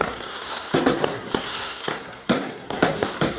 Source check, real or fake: fake